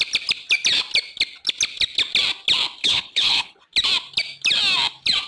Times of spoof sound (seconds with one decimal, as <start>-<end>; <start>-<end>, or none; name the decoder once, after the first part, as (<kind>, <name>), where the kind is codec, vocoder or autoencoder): 2.8-3.6 (codec, HILCodec)